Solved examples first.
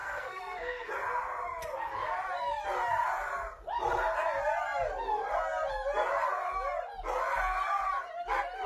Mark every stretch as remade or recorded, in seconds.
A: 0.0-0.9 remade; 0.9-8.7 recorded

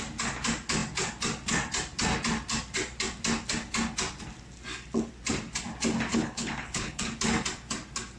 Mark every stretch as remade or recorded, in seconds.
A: 0.0-6.1 recorded; 6.1-7.0 remade; 7.0-8.2 recorded

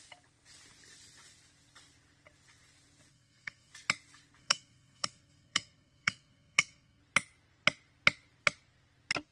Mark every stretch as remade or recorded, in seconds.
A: 0.0-3.1 recorded; 3.1-3.7 remade; 3.7-4.4 recorded; 4.4-7.0 remade; 7.0-9.3 recorded

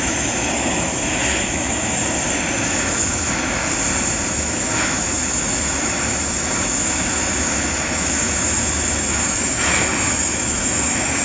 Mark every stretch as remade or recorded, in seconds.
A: 0.0-2.0 remade; 2.0-2.6 recorded; 2.6-3.6 remade; 3.6-4.3 recorded; 4.3-11.2 remade

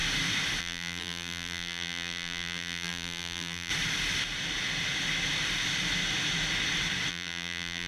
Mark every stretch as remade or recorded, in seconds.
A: 0.0-0.6 recorded; 0.6-3.7 remade; 3.7-7.1 recorded; 7.1-7.9 remade

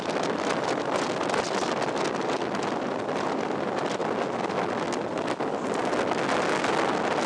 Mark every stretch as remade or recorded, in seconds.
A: 0.0-7.3 recorded

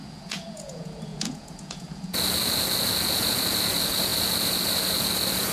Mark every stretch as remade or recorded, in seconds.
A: 0.0-5.5 remade

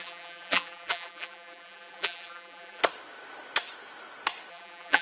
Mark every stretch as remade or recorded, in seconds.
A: 0.0-2.8 remade; 2.8-4.5 recorded; 4.5-5.0 remade